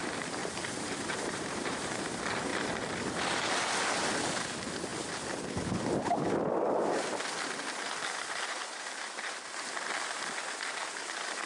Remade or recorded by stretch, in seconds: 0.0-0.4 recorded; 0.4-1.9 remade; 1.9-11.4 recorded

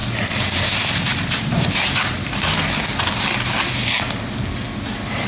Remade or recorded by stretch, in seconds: 0.0-0.6 remade; 0.6-1.1 recorded; 1.1-2.6 remade; 2.6-5.3 recorded

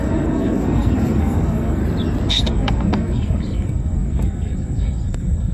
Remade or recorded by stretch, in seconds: 0.0-1.8 remade; 1.8-2.3 recorded; 2.3-5.5 remade

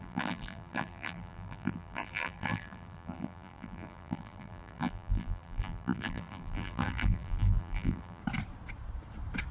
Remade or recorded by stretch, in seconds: 0.0-8.2 remade; 8.2-9.5 recorded

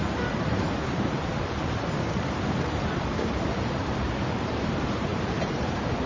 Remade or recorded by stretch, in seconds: 0.0-6.1 remade

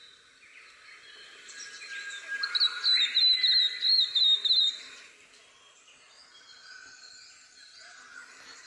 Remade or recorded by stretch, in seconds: 0.0-8.7 recorded